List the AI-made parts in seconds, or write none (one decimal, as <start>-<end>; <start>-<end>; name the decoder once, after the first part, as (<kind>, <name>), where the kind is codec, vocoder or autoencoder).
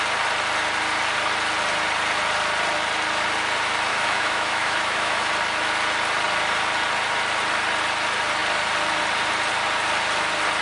3.9-5.3 (autoencoder, DAC-VAE)